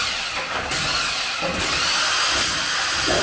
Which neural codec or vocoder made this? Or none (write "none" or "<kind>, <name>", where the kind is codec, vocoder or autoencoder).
none